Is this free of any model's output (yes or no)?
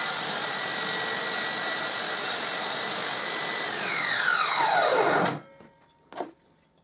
yes